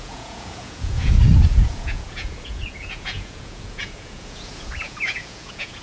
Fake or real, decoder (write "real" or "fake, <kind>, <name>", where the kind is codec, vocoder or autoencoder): fake, vocoder, Vocos